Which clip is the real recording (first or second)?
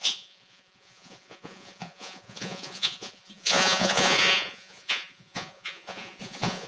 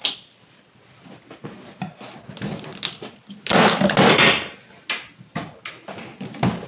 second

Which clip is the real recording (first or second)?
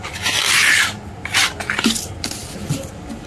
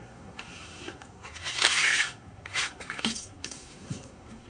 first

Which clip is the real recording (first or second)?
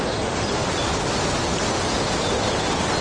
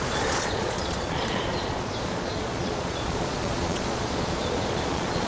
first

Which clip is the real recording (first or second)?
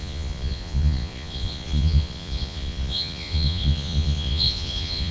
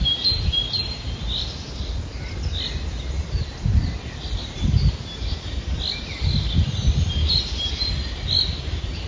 second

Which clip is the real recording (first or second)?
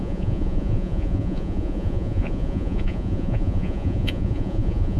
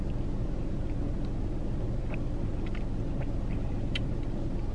second